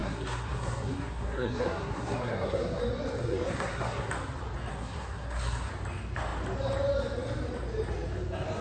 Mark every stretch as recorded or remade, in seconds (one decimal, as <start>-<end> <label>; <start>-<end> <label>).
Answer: 0.0-2.8 remade; 2.8-3.2 recorded; 3.2-4.1 remade; 4.1-4.7 recorded; 4.7-5.7 remade; 5.7-8.6 recorded